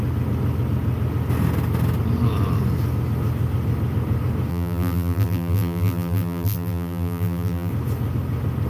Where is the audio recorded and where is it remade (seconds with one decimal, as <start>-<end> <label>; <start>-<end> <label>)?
0.0-4.5 recorded; 4.5-7.7 remade; 7.7-8.7 recorded